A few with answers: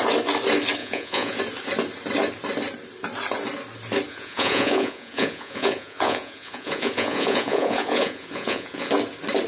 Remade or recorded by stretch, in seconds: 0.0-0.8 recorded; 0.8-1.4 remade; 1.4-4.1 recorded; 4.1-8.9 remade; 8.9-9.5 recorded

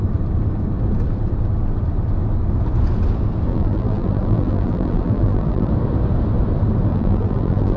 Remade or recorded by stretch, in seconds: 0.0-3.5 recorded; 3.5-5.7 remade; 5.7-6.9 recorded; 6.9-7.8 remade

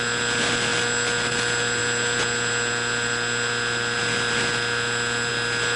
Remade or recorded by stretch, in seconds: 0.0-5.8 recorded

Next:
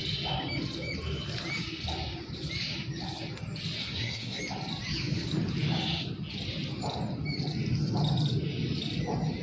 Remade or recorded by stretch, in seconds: 0.0-3.8 recorded; 3.8-4.4 remade; 4.4-9.4 recorded